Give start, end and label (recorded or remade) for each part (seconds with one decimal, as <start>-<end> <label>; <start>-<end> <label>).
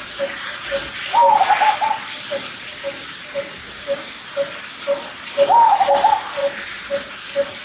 0.0-2.7 recorded; 2.7-3.2 remade; 3.2-3.6 recorded; 3.6-4.2 remade; 4.2-7.6 recorded